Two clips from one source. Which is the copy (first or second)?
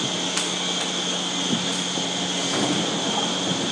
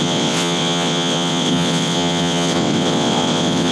second